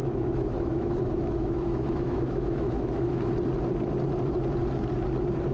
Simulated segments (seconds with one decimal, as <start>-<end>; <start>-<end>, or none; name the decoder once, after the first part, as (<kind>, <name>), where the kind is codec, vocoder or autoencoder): 0.0-3.3 (autoencoder, DAC-VAE)